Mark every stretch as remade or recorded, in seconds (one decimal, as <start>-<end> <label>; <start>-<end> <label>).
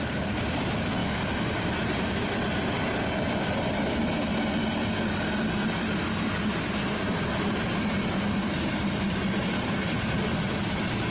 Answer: 0.0-11.1 recorded